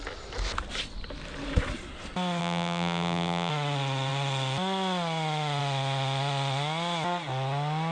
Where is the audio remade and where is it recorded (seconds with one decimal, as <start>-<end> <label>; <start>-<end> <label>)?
0.0-2.4 recorded; 2.4-3.5 remade; 3.5-7.9 recorded